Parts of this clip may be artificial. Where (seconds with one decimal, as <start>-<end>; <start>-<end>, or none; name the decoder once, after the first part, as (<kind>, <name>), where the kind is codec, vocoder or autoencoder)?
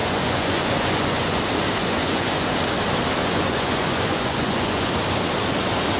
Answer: 0.0-1.4 (vocoder, Vocos); 1.8-2.5; 3.2-4.9